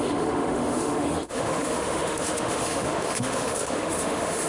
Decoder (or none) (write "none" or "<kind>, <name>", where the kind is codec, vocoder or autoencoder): autoencoder, DAC-VAE